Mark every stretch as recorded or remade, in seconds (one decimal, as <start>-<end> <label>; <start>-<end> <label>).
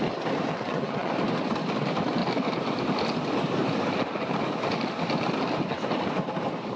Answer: 0.0-0.5 recorded; 0.5-1.1 remade; 1.1-6.8 recorded